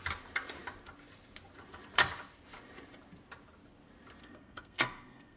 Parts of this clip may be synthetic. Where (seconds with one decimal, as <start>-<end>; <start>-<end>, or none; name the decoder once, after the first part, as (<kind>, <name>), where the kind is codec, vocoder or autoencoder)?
4.2-5.4 (codec, SNAC)